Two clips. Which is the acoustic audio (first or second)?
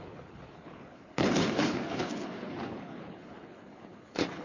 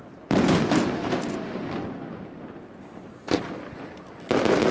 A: second